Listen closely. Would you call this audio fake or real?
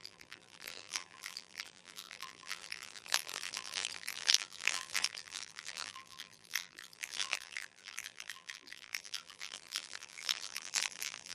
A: fake